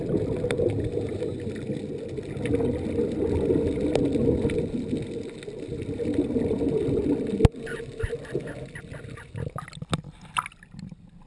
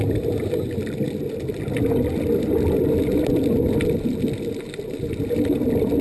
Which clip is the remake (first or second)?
second